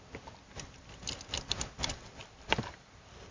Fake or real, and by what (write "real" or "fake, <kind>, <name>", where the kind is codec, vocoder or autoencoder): real